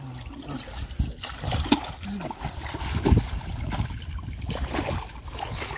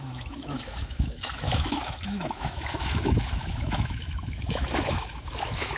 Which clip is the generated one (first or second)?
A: second